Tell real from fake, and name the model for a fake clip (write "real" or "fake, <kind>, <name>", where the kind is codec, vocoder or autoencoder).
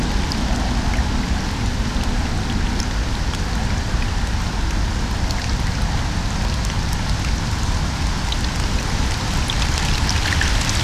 real